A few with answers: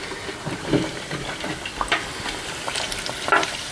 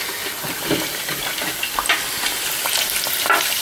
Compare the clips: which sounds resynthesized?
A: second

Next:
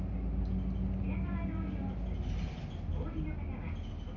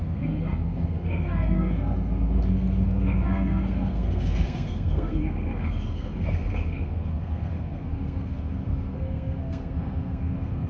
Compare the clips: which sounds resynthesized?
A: second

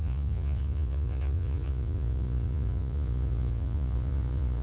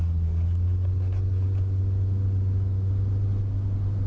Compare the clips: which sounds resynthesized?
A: first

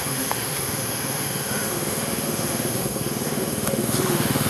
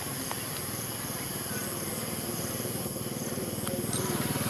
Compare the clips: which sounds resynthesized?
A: first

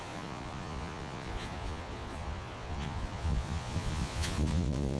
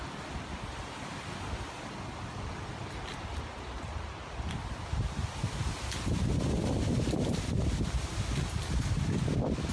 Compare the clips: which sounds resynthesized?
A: first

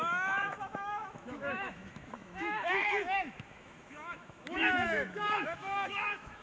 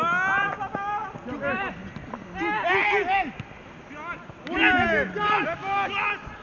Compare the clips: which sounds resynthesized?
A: first